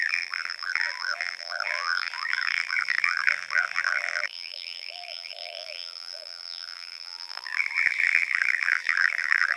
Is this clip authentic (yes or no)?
no